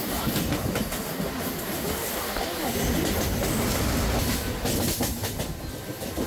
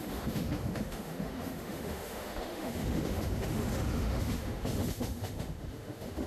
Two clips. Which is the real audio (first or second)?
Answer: first